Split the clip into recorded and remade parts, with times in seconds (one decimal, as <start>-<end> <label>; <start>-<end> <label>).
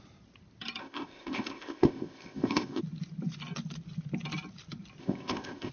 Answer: 0.0-0.8 recorded; 0.8-2.8 remade; 2.8-5.0 recorded; 5.0-5.7 remade